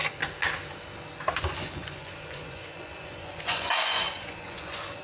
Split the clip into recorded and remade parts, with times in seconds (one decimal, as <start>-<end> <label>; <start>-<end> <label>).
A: 0.0-1.4 recorded; 1.4-5.0 remade